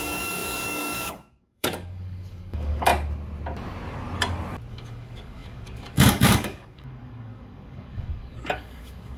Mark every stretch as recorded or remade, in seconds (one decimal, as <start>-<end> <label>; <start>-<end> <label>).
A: 0.0-2.9 remade; 2.9-4.7 recorded; 4.7-9.2 remade

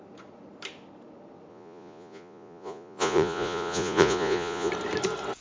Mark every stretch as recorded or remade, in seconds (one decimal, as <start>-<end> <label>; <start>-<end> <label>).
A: 0.0-1.5 recorded; 1.5-4.7 remade; 4.7-5.4 recorded

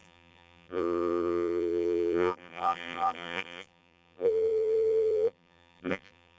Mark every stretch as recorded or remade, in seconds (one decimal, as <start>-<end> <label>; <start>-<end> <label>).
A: 0.0-6.4 remade

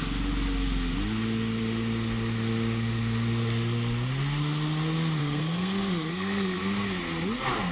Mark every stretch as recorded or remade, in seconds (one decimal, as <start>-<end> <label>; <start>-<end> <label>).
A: 0.0-5.2 recorded; 5.2-6.6 remade; 6.6-7.7 recorded

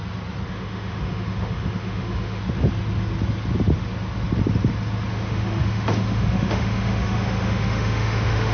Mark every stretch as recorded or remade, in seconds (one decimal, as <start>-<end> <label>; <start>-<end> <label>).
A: 0.0-0.5 recorded; 0.5-2.4 remade; 2.4-5.1 recorded; 5.1-8.5 remade

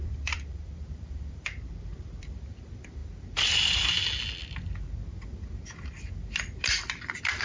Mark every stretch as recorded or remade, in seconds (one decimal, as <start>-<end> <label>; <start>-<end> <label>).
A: 0.0-3.0 remade; 3.0-6.8 recorded; 6.8-7.4 remade

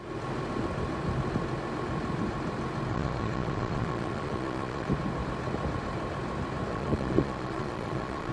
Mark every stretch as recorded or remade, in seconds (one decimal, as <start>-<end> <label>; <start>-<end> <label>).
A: 0.0-2.9 recorded; 2.9-4.9 remade; 4.9-6.7 recorded; 6.7-8.3 remade

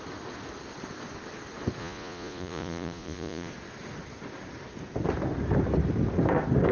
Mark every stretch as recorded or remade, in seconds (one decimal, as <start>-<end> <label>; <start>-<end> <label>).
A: 0.0-1.8 recorded; 1.8-3.5 remade; 3.5-6.7 recorded